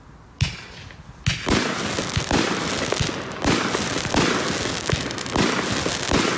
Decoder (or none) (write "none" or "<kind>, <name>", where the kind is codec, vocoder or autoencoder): none